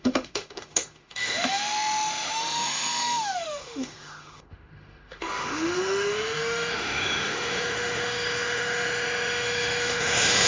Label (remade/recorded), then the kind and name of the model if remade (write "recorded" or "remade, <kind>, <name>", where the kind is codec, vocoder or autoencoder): remade, autoencoder, DAC-VAE